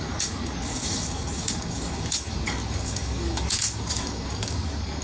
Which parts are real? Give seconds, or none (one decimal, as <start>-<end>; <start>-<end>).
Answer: none